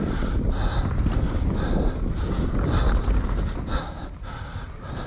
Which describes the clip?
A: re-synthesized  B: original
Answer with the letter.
B